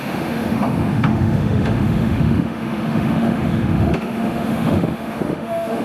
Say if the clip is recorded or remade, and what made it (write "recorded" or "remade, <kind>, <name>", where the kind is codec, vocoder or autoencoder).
remade, autoencoder, DAC-VAE